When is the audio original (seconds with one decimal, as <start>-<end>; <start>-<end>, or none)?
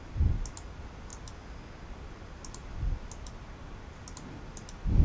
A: 0.0-5.0